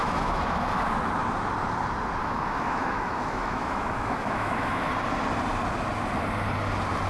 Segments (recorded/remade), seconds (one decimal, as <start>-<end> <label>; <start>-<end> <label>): 0.0-0.8 remade; 0.8-2.2 recorded; 2.2-4.9 remade; 4.9-7.1 recorded

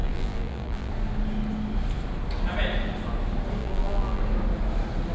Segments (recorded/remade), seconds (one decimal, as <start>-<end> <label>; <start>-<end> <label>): 0.0-0.9 remade; 0.9-3.6 recorded; 3.6-4.2 remade; 4.2-5.1 recorded

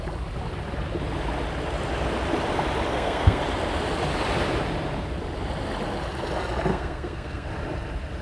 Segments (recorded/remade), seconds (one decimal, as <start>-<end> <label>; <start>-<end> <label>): 0.0-2.9 recorded; 2.9-3.4 remade; 3.4-6.7 recorded; 6.7-7.5 remade; 7.5-8.2 recorded

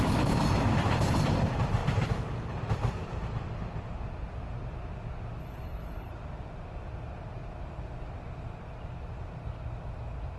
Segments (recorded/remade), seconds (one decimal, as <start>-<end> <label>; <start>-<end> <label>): 0.0-5.4 recorded; 5.4-6.1 remade; 6.1-10.4 recorded

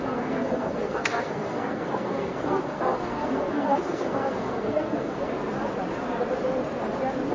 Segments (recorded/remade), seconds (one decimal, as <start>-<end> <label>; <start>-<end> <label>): 0.0-5.3 remade; 5.3-7.3 recorded